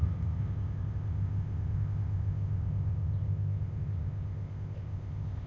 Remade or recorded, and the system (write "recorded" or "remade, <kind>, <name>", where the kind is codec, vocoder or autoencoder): remade, codec, ZipCodec